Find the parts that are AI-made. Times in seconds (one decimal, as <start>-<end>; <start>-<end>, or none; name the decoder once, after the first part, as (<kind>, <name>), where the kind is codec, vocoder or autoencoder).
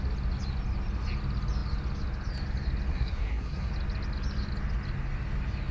2.9-3.7 (codec, SNAC)